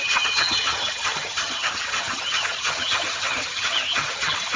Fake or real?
fake